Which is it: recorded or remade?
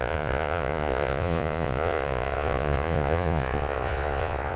remade